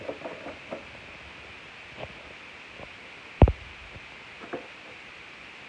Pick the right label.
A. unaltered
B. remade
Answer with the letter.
A